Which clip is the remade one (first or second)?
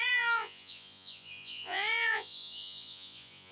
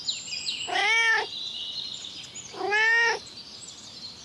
first